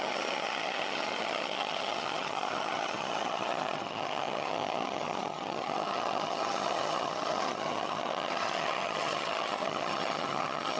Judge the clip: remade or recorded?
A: remade